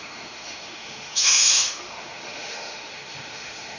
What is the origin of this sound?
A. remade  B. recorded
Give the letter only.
A